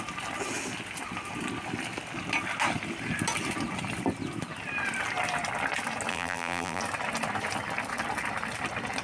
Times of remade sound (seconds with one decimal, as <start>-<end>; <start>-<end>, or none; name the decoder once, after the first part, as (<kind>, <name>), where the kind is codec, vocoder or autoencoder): 6.1-6.8 (vocoder, BigVGAN v2)